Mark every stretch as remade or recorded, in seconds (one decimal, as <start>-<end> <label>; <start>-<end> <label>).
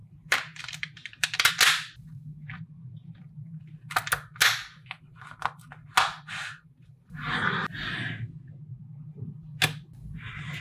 0.0-1.5 remade; 1.5-2.4 recorded; 2.4-3.3 remade; 3.3-10.6 recorded